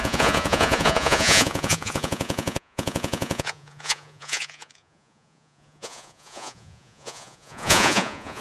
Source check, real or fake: fake